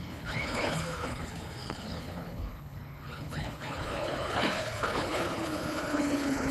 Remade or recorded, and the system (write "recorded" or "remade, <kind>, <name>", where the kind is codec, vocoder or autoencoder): remade, codec, HILCodec